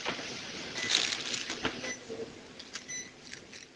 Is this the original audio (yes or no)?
yes